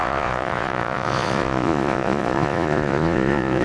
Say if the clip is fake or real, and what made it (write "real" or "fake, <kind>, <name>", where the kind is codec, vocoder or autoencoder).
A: fake, vocoder, Vocos